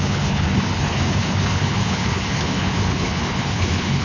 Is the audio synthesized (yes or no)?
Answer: yes